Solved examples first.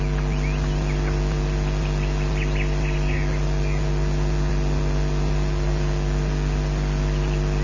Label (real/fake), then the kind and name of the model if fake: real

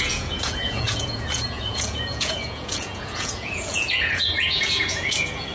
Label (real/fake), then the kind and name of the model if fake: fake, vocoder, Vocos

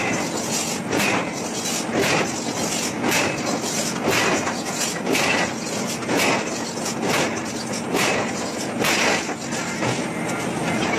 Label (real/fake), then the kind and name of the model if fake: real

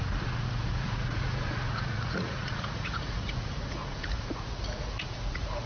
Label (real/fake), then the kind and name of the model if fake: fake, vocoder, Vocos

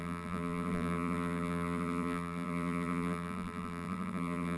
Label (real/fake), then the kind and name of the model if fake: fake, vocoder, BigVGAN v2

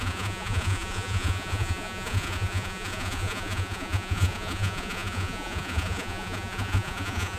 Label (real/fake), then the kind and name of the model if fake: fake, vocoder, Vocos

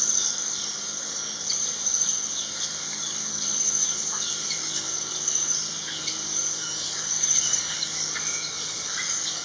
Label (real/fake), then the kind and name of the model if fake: fake, codec, DAC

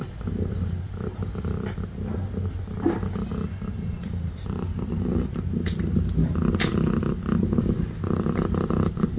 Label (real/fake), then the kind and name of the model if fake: real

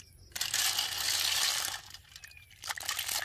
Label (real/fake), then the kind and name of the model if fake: real